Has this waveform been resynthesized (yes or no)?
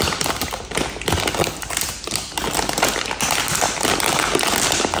no